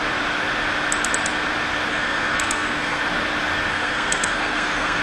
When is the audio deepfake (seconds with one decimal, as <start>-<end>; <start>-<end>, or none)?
1.9-3.0; 3.7-5.0